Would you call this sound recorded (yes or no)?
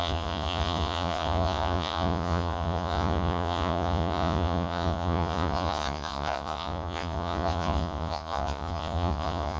no